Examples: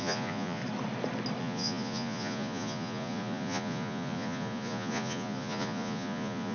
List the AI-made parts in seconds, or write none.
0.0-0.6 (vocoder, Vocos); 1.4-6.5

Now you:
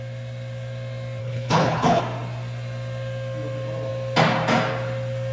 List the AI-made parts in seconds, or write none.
1.2-2.0 (codec, HILCodec)

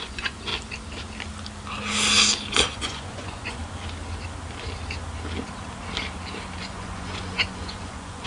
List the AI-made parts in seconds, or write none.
0.0-0.5 (vocoder, Vocos); 2.7-3.6; 6.6-8.3

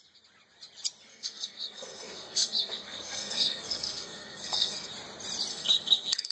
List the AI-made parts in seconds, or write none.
1.1-4.9 (codec, SNAC); 5.5-6.3

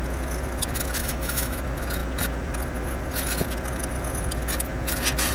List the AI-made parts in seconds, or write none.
1.0-1.6 (autoencoder, DAC-VAE)

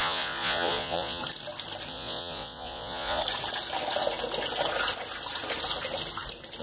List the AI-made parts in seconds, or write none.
0.0-1.2 (vocoder, Vocos); 1.9-3.2

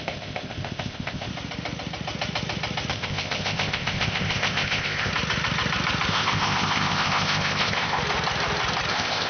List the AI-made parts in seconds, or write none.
0.0-1.3 (codec, ZipCodec); 2.9-5.1; 6.1-8.0; 8.9-9.3